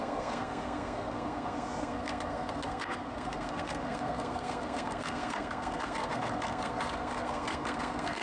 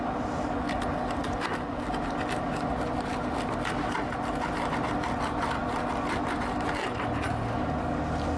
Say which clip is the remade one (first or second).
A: first